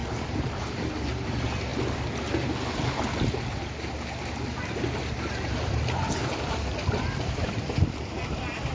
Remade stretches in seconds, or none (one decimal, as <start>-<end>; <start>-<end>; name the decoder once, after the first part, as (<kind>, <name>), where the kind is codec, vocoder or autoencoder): 0.0-0.6 (vocoder, BigVGAN v2); 5.0-5.7